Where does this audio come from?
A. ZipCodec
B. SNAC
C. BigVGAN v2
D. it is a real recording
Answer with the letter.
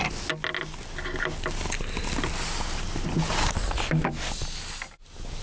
D